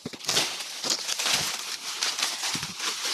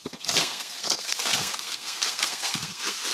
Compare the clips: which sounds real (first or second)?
first